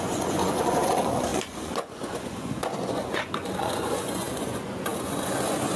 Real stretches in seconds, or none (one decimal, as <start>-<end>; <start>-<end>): none